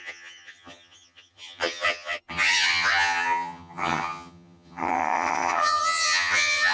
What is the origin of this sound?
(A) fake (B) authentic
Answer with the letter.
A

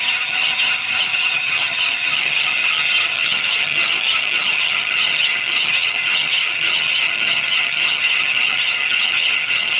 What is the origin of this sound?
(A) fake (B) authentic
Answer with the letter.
A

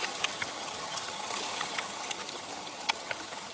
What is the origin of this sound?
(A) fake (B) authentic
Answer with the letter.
A